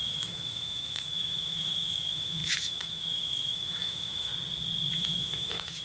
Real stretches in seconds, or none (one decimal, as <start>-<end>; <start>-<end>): 4.3-4.9

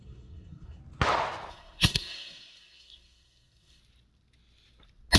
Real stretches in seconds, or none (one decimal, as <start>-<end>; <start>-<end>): 0.8-1.5; 3.8-5.2

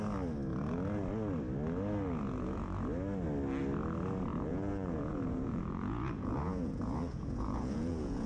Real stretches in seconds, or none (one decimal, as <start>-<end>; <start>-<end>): 0.0-4.3

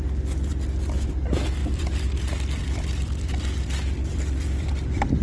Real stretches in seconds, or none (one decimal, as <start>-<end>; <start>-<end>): 0.0-1.6; 4.7-5.2

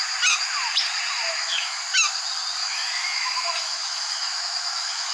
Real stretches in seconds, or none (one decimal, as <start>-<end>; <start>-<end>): 0.0-1.3; 1.8-2.6

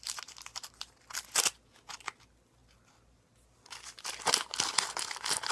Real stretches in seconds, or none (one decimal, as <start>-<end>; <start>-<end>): 0.0-5.5